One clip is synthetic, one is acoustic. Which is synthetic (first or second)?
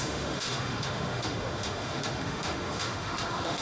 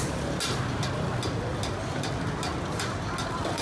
first